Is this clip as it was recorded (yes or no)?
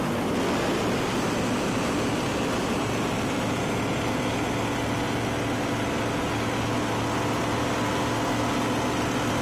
yes